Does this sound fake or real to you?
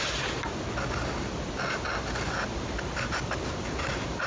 real